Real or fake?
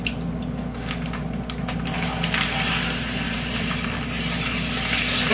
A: real